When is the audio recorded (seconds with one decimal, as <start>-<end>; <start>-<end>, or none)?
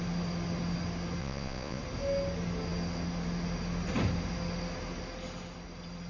0.0-1.2; 1.8-6.1